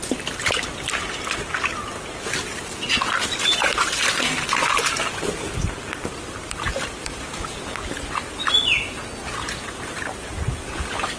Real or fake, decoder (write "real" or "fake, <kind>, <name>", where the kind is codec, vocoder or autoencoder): real